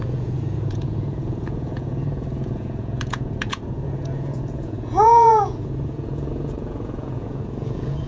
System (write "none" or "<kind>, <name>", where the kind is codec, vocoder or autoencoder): vocoder, Vocos